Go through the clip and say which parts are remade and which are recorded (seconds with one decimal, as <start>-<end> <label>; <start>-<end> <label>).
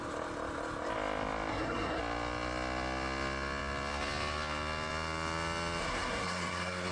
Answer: 0.0-1.5 recorded; 1.5-2.0 remade; 2.0-5.8 recorded; 5.8-6.9 remade